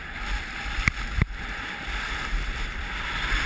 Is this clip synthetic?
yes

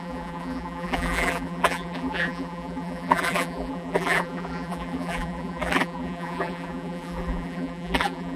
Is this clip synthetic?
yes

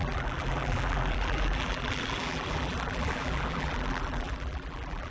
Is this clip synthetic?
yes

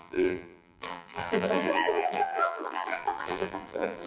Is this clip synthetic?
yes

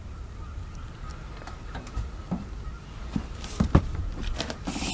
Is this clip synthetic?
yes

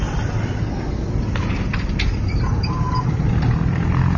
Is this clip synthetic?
no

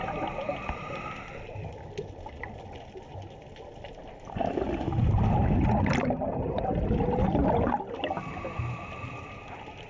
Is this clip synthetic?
no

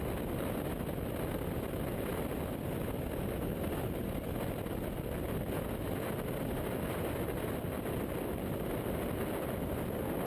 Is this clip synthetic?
no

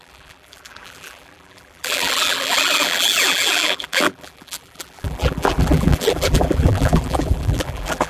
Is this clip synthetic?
yes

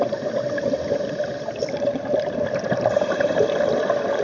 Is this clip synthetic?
no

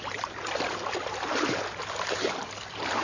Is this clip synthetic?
yes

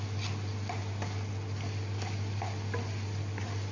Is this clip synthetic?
yes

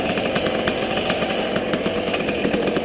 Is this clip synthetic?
yes